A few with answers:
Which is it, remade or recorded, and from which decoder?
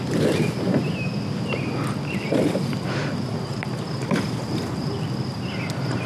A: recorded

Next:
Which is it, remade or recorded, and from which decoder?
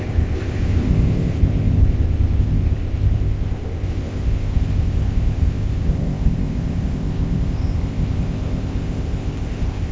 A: remade, codec, ZipCodec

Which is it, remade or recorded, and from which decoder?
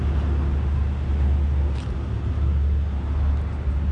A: recorded